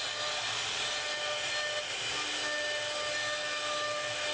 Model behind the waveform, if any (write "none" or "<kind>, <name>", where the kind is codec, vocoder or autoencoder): none